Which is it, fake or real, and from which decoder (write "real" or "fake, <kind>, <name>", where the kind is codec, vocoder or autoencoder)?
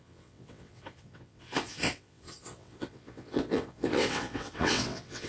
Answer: fake, vocoder, WaveNeXt